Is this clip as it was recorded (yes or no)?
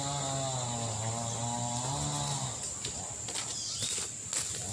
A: yes